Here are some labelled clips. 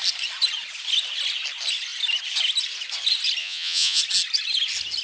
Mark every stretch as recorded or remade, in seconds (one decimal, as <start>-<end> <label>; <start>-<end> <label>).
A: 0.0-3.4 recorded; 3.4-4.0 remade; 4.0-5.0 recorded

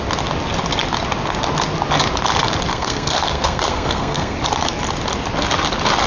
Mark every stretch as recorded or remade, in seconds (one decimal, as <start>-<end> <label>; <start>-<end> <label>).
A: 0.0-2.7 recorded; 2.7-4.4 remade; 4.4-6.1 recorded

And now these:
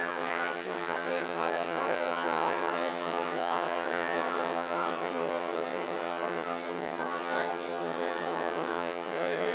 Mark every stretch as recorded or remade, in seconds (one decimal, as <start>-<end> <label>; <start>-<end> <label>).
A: 0.0-9.5 remade

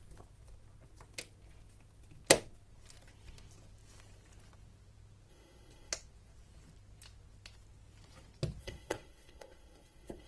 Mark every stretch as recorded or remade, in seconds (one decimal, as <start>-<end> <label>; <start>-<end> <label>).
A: 0.0-5.3 recorded; 5.3-5.9 remade; 5.9-8.6 recorded; 8.6-10.3 remade